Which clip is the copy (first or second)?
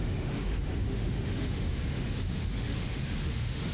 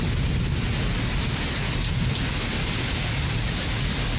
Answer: first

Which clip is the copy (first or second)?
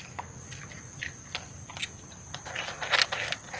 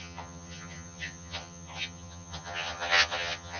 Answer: second